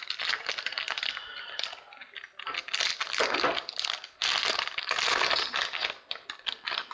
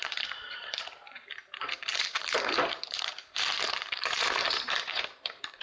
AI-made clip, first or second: second